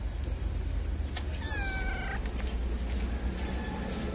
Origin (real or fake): real